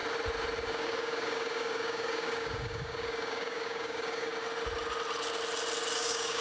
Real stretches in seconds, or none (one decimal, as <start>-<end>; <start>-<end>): 0.0-0.7; 4.3-6.0